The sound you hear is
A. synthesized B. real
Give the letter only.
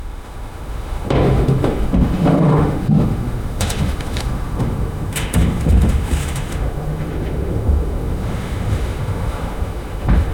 A